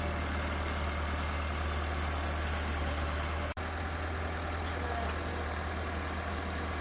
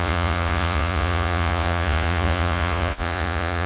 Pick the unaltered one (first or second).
first